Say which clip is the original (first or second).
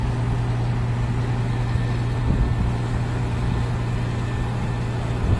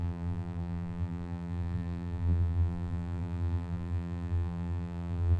first